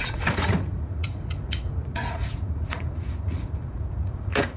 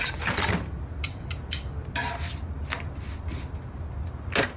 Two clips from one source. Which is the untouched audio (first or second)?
second